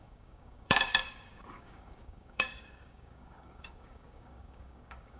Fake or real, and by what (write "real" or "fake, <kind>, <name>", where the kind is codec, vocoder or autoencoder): fake, codec, DAC